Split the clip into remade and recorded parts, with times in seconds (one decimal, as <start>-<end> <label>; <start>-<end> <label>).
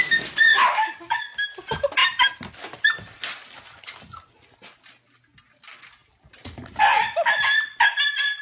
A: 0.0-0.5 recorded; 0.5-1.2 remade; 1.2-8.4 recorded